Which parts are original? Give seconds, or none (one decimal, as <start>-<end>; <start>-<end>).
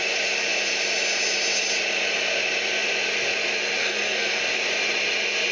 0.0-3.8; 4.4-5.5